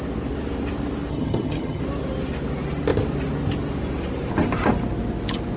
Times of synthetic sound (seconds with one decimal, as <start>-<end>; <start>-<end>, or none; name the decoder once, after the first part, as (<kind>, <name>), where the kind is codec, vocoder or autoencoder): 1.1-1.8 (vocoder, HiFi-GAN)